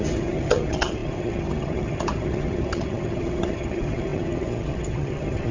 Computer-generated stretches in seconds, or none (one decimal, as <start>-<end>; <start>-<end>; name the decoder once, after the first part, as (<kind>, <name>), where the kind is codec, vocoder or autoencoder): 0.0-5.5 (vocoder, HiFi-GAN)